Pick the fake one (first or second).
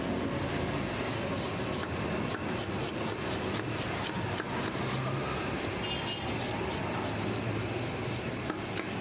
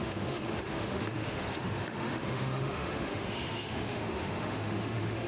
second